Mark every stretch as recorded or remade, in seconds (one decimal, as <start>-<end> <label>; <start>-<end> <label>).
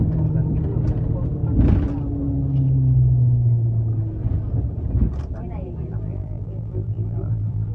0.0-5.9 recorded; 5.9-7.7 remade